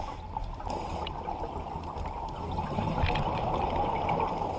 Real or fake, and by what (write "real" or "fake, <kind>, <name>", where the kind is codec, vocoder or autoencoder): real